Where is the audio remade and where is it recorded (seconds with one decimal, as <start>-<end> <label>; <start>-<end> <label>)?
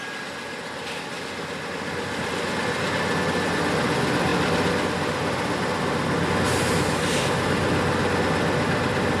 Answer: 0.0-9.2 recorded